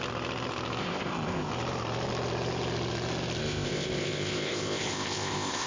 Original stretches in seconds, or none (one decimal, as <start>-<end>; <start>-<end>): 0.0-0.8; 1.5-3.4